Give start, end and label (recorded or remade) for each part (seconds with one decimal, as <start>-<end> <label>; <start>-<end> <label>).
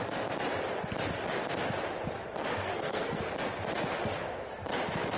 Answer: 0.0-2.4 recorded; 2.4-3.2 remade; 3.2-5.2 recorded